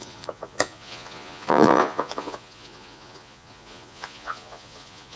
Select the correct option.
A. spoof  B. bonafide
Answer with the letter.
A